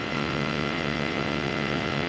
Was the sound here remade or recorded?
remade